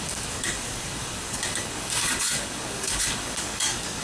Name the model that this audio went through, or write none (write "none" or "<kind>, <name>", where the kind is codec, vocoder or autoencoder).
codec, DAC